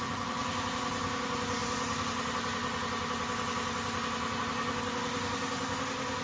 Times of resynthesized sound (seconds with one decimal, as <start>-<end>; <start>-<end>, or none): none